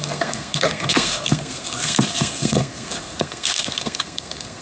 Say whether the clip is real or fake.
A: fake